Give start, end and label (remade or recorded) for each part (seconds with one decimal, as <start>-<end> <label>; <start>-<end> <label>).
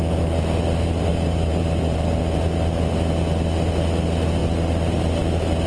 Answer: 0.0-1.1 recorded; 1.1-2.2 remade; 2.2-5.7 recorded